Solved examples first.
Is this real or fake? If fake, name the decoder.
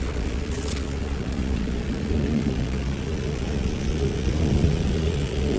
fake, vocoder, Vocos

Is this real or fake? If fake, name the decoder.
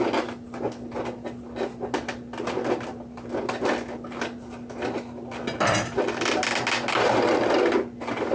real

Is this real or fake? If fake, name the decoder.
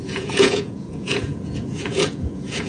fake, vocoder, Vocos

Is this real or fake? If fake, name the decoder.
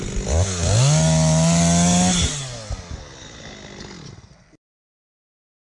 real